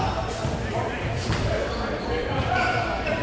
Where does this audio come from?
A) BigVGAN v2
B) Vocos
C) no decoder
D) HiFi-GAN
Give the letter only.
A